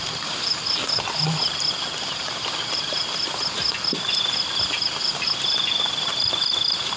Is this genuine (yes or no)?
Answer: yes